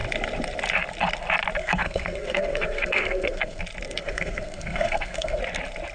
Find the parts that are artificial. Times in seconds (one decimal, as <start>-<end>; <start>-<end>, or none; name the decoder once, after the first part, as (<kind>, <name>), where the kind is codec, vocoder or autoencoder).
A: 1.6-3.6 (codec, SNAC); 4.0-5.4